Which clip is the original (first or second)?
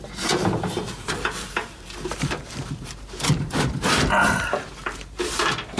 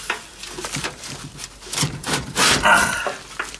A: second